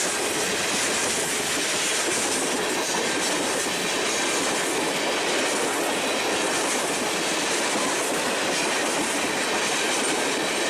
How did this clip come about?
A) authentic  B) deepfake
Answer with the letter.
A